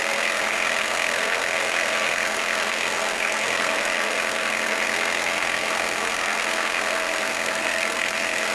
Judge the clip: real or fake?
fake